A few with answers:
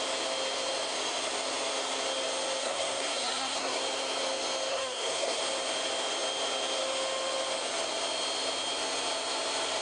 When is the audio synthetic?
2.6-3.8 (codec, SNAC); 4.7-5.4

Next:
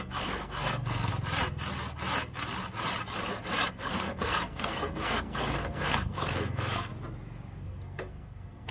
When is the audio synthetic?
0.0-1.1 (codec, SNAC); 3.7-6.9; 7.6-8.7

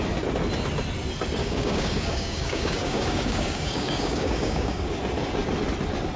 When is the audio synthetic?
1.4-5.0 (codec, DAC)